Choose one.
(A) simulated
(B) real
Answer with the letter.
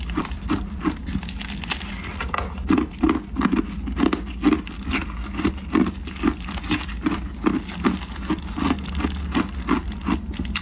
B